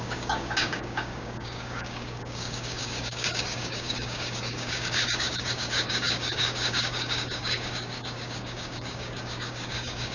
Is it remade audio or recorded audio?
remade